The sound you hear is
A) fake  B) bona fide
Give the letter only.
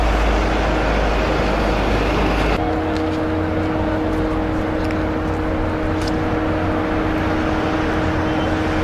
B